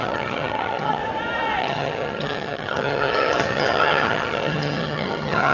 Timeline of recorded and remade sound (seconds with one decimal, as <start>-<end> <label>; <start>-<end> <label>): 0.0-1.0 remade; 1.0-1.6 recorded; 1.6-5.5 remade